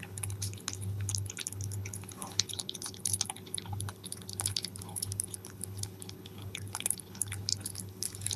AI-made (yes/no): yes